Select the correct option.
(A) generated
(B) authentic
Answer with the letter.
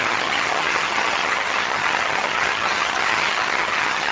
A